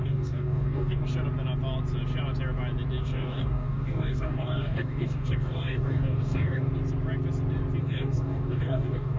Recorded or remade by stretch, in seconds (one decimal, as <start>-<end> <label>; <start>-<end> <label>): 0.0-1.0 remade; 1.0-3.0 recorded; 3.0-6.7 remade; 6.7-7.8 recorded; 7.8-9.2 remade